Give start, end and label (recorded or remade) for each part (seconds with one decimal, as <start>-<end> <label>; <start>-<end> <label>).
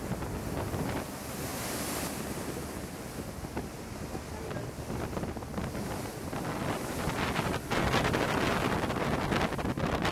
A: 0.0-10.1 recorded